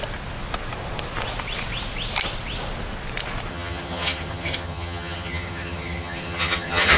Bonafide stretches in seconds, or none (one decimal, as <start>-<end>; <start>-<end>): 0.0-3.5